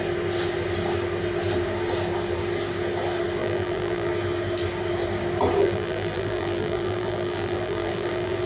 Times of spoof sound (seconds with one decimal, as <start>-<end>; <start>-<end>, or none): 3.4-4.1; 5.6-8.5